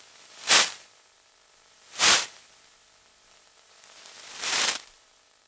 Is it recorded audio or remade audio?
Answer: remade